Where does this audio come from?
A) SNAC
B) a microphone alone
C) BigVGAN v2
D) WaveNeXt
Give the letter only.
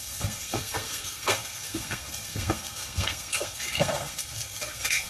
A